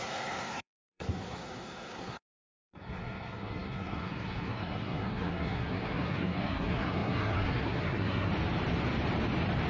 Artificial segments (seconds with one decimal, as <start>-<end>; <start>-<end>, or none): 0.0-8.3